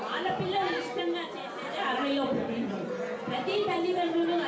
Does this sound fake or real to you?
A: real